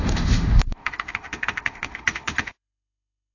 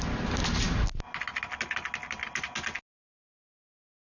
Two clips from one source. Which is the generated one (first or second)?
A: first